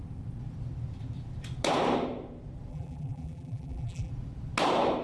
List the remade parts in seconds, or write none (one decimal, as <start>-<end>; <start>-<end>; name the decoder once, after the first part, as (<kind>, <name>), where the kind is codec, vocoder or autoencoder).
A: 2.7-4.1 (vocoder, BigVGAN v2)

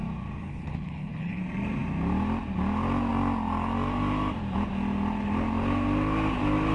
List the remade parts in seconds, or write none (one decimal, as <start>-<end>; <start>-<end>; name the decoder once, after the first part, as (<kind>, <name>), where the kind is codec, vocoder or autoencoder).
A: 0.4-1.4 (codec, HILCodec)

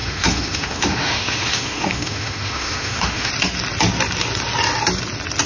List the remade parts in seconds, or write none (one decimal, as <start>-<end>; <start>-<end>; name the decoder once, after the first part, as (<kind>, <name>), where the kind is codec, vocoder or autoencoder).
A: 0.0-3.3 (autoencoder, DAC-VAE)

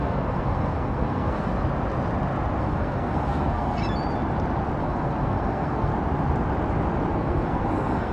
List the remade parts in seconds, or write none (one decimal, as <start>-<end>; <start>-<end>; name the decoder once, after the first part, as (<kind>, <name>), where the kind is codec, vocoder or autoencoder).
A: 0.0-1.5 (codec, SNAC); 2.6-3.8; 4.8-5.9; 7.1-8.1

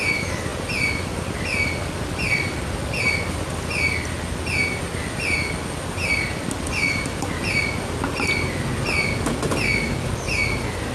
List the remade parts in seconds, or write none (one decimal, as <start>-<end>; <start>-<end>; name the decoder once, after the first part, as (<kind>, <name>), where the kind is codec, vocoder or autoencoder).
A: none

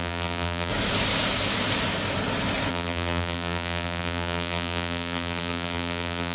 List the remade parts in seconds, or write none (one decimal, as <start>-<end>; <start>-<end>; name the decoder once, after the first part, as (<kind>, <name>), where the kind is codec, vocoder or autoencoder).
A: 0.0-0.7 (vocoder, BigVGAN v2); 2.7-6.3

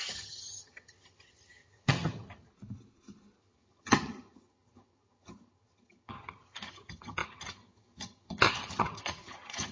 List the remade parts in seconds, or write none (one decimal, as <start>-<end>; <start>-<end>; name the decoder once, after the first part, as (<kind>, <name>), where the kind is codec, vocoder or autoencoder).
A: 0.0-2.5 (vocoder, HiFi-GAN); 3.4-9.7

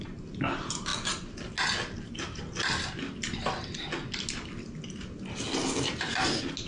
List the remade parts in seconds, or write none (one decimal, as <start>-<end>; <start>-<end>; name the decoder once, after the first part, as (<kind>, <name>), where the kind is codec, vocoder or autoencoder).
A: none